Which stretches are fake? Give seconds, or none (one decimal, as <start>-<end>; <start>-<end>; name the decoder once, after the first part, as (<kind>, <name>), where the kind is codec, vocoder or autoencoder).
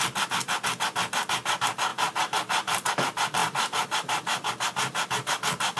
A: 1.9-2.9 (vocoder, BigVGAN v2); 3.4-4.5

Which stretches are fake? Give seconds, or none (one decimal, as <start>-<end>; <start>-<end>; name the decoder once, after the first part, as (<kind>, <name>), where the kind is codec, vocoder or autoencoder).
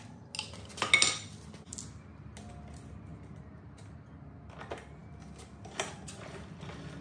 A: none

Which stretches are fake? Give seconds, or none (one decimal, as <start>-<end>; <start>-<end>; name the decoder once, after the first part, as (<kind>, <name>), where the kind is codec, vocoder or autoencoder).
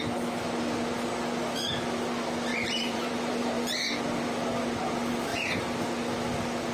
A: 2.5-4.0 (vocoder, BigVGAN v2)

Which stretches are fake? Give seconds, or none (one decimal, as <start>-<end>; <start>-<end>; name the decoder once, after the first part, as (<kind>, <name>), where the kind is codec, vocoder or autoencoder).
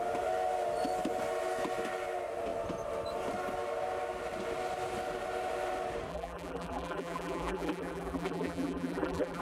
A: 6.1-9.4 (vocoder, BigVGAN v2)